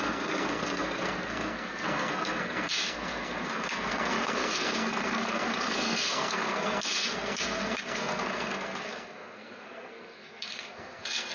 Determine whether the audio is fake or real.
fake